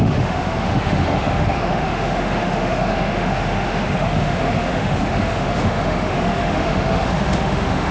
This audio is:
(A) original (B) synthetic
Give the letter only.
B